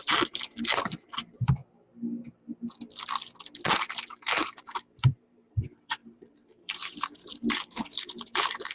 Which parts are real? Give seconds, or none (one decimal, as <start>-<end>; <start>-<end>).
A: 1.6-4.4